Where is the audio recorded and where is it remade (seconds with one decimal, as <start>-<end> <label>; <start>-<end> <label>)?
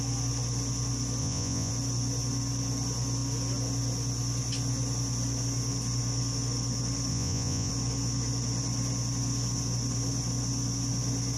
0.0-1.2 recorded; 1.2-1.7 remade; 1.7-7.1 recorded; 7.1-7.7 remade; 7.7-11.4 recorded